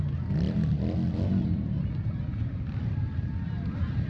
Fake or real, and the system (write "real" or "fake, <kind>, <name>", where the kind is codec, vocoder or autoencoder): real